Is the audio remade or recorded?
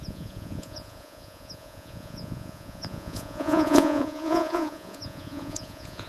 remade